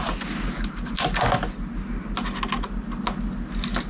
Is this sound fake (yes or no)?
no